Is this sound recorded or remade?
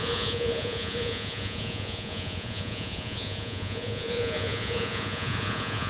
remade